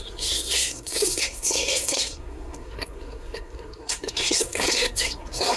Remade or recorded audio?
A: remade